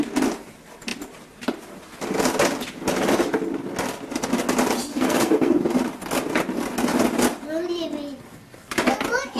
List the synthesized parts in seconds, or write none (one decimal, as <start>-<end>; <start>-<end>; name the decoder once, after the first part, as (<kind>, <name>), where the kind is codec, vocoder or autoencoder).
4.9-5.6 (codec, SNAC)